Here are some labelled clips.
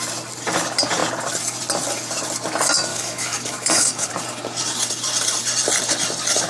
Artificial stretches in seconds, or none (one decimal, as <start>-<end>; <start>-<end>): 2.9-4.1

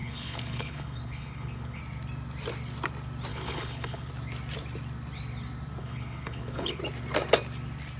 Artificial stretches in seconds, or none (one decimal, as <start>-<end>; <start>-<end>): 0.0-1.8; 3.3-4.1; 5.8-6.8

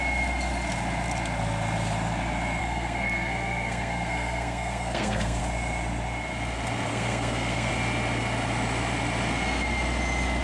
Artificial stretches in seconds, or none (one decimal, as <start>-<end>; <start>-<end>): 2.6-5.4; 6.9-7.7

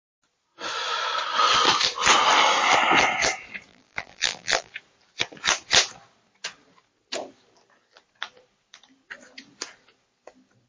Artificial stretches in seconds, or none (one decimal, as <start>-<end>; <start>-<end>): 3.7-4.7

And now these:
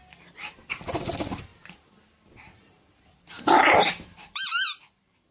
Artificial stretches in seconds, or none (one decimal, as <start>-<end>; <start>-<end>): 0.0-1.5; 3.9-5.3

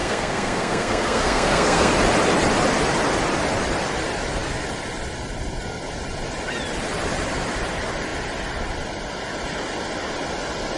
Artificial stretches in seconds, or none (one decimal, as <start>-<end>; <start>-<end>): 0.0-1.9